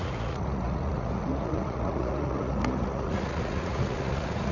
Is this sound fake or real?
fake